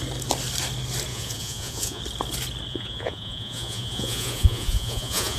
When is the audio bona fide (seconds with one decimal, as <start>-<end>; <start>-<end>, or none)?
0.0-1.1; 2.0-2.7